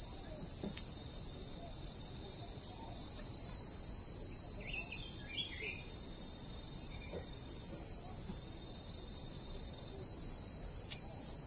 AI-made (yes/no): no